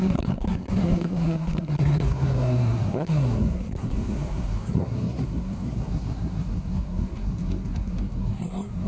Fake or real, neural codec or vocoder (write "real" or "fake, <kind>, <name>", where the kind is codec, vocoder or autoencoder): fake, codec, SNAC